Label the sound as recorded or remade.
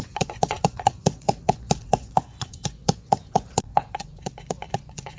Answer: remade